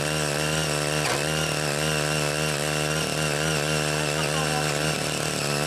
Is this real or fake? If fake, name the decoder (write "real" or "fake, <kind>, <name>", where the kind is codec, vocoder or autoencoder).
real